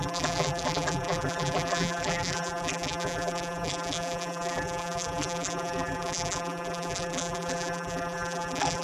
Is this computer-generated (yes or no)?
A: yes